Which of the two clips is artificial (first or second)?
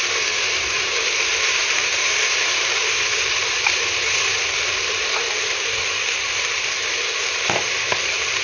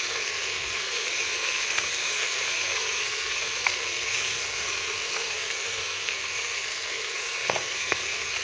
second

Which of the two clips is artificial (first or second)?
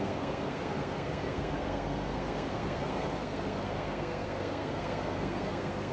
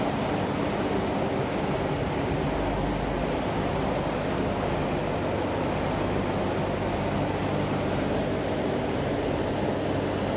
first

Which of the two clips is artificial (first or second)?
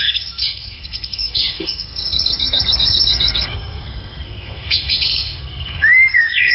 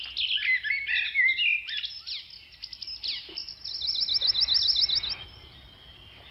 first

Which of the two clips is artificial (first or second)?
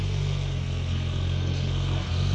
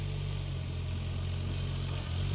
first